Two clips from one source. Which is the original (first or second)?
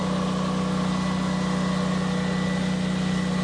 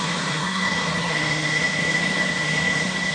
first